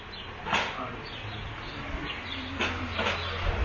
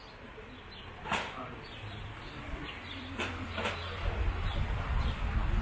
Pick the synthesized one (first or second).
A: second